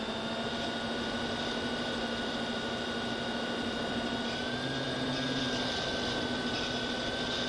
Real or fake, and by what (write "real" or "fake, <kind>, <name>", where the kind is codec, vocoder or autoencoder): fake, vocoder, BigVGAN v2